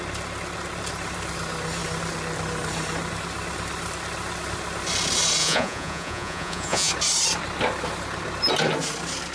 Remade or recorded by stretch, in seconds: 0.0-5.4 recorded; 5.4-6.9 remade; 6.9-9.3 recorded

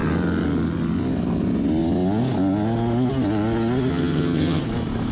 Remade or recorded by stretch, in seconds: 0.0-3.9 recorded; 3.9-4.6 remade; 4.6-5.1 recorded

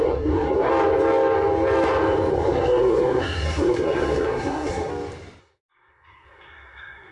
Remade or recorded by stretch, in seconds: 0.0-0.7 remade; 0.7-2.3 recorded; 2.3-4.9 remade; 4.9-5.4 recorded; 5.4-7.1 remade

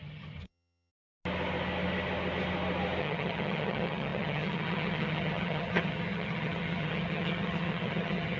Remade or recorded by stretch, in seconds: 0.0-0.9 remade; 0.9-3.0 recorded; 3.0-8.4 remade

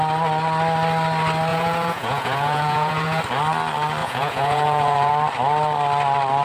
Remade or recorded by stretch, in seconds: 0.0-1.5 recorded; 1.5-3.2 remade; 3.2-4.0 recorded; 4.0-5.1 remade; 5.1-6.4 recorded

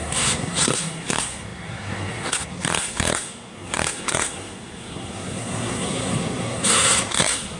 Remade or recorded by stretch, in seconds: 0.0-7.6 remade